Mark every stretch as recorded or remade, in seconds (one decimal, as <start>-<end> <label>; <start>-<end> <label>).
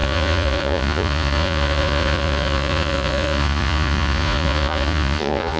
0.0-5.6 remade